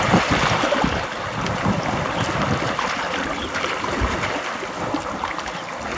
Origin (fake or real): real